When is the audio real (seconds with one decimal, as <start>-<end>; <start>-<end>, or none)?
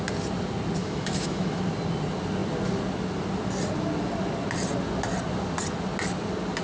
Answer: 0.0-0.8; 1.6-6.6